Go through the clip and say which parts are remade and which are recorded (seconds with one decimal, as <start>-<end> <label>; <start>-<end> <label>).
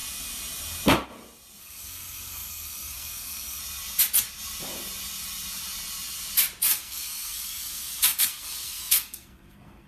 0.0-1.6 recorded; 1.6-3.6 remade; 3.6-6.7 recorded; 6.7-9.9 remade